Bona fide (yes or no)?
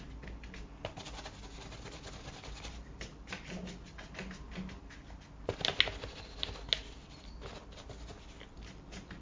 yes